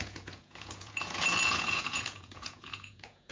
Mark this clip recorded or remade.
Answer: remade